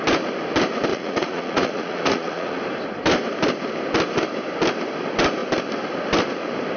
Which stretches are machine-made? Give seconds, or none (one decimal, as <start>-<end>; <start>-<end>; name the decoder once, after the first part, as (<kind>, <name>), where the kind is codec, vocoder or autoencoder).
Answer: 0.9-2.6 (vocoder, Vocos)